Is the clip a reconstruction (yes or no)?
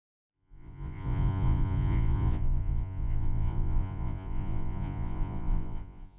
yes